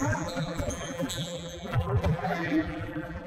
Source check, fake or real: fake